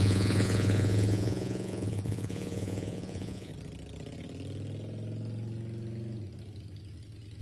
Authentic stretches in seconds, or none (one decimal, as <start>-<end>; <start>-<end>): 3.5-7.4